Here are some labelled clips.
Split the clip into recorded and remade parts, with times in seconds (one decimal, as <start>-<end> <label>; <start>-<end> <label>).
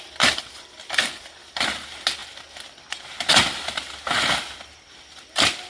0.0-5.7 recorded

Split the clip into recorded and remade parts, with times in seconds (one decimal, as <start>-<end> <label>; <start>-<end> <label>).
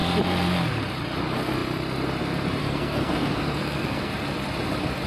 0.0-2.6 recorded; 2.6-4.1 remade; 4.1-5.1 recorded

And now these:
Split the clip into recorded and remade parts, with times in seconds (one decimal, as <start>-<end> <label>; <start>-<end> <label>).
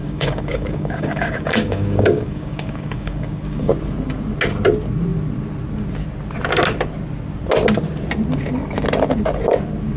0.0-3.7 remade; 3.7-10.0 recorded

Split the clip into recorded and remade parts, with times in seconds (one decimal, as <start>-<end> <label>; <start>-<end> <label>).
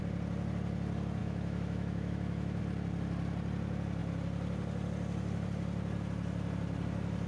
0.0-1.2 recorded; 1.2-2.6 remade; 2.6-7.3 recorded